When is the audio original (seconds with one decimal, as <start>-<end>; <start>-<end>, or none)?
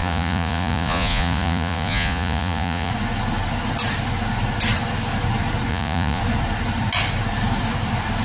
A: 2.9-5.7; 6.2-8.2